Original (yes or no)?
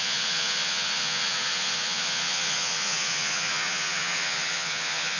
no